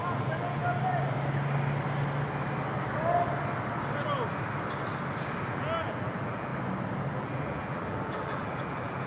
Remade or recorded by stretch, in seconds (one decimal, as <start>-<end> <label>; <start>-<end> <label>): 0.0-0.6 remade; 0.6-5.5 recorded; 5.5-6.5 remade; 6.5-7.1 recorded; 7.1-9.1 remade